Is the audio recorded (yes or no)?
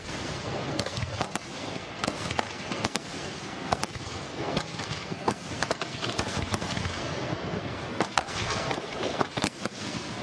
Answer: no